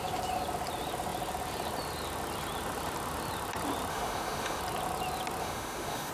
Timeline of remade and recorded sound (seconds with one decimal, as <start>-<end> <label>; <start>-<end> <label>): 0.0-3.9 recorded; 3.9-4.6 remade; 4.6-5.4 recorded; 5.4-6.1 remade